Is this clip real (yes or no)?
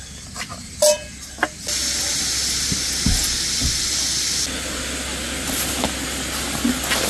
yes